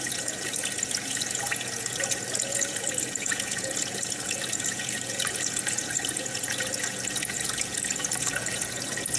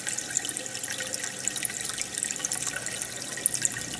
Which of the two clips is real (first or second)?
second